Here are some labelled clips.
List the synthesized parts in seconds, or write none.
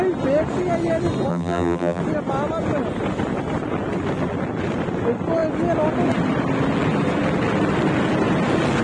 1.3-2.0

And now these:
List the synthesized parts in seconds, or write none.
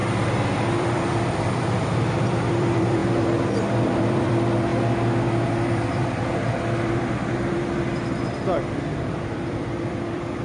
0.6-4.7; 5.5-10.4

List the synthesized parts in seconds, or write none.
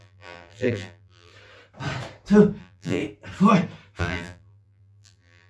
0.0-1.3; 2.6-3.0; 4.0-5.5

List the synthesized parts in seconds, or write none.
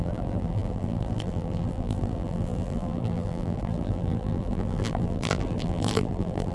0.0-6.5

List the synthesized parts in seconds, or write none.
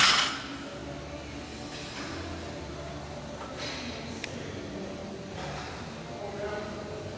none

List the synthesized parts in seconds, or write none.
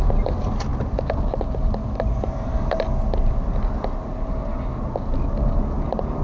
none